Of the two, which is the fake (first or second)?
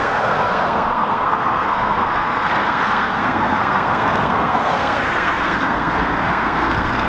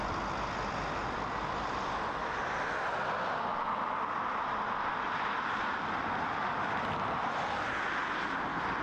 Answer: first